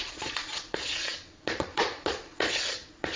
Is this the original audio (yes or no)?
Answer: no